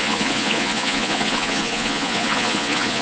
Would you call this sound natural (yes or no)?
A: no